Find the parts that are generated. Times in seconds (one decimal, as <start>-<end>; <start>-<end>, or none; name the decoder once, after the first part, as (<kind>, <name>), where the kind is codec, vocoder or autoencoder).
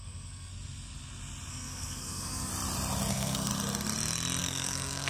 0.0-0.5 (codec, SNAC); 1.5-2.5; 3.1-3.5; 4.4-5.1